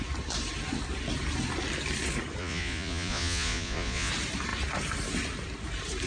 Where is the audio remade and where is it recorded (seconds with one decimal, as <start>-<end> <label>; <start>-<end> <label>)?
0.0-2.4 recorded; 2.4-4.1 remade; 4.1-6.1 recorded